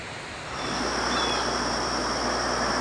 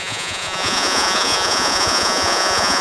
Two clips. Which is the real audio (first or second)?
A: first